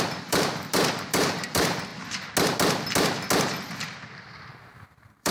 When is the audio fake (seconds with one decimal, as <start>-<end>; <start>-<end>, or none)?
0.0-1.9; 3.8-5.3